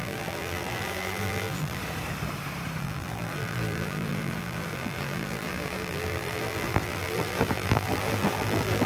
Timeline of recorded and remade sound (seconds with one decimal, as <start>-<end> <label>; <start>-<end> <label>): 0.0-1.8 remade; 1.8-2.8 recorded; 2.8-8.9 remade